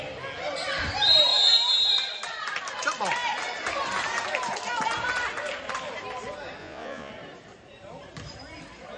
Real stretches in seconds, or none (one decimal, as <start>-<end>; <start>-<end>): 0.0-6.6; 7.1-9.0